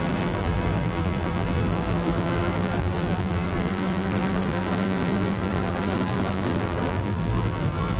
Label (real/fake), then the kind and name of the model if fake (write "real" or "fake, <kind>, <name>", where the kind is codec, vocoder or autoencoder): fake, vocoder, BigVGAN v2